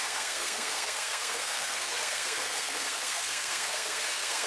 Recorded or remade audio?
remade